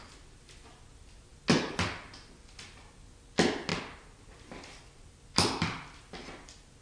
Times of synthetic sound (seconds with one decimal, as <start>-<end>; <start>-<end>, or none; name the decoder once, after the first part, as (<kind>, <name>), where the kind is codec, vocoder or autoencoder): none